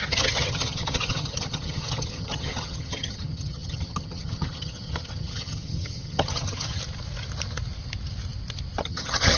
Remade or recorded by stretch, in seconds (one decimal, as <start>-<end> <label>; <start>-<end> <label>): 0.0-6.8 remade; 6.8-8.8 recorded; 8.8-9.4 remade